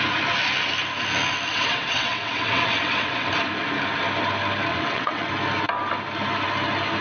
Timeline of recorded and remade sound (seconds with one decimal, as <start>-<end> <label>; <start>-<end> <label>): 0.0-1.5 recorded; 1.5-3.3 remade; 3.3-4.7 recorded; 4.7-5.3 remade; 5.3-7.0 recorded